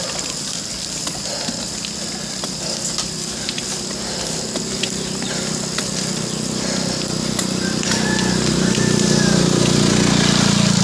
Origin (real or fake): real